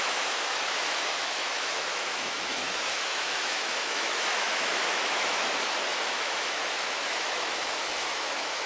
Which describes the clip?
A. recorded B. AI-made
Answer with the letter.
B